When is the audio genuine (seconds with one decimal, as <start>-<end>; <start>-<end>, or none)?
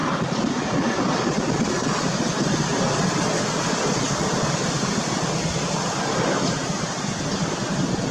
0.0-8.1